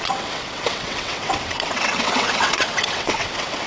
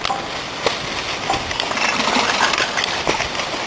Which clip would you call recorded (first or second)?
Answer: second